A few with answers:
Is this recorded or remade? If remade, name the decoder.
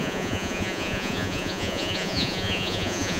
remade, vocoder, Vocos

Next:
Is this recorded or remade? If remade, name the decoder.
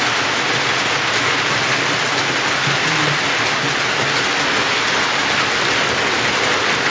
recorded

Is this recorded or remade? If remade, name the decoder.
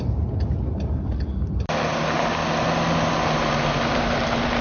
recorded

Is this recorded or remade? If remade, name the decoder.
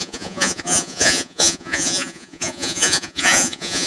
remade, vocoder, Vocos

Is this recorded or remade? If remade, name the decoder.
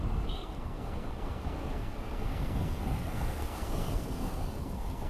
remade, codec, SNAC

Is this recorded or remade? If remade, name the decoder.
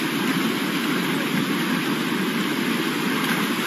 recorded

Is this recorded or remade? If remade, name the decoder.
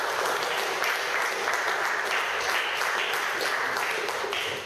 recorded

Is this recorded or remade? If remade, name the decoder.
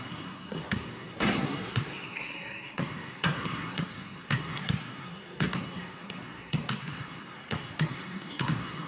remade, codec, SNAC